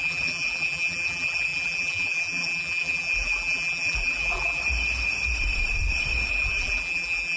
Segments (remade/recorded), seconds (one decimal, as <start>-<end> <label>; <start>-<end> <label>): 0.0-4.6 remade; 4.6-6.3 recorded; 6.3-7.4 remade